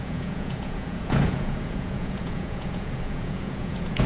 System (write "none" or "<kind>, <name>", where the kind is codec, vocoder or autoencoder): vocoder, Vocos